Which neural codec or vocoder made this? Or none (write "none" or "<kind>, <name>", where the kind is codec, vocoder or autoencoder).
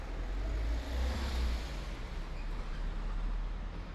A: none